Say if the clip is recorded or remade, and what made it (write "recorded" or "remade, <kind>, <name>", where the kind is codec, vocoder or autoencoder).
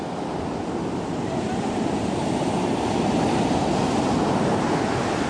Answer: remade, vocoder, BigVGAN v2